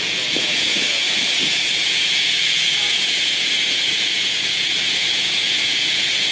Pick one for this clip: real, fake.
fake